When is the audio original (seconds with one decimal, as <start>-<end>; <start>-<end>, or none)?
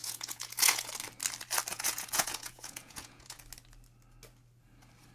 0.9-1.7; 3.4-5.1